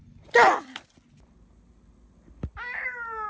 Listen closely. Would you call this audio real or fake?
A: real